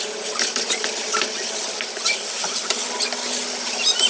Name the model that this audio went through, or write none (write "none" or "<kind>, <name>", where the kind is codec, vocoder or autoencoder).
none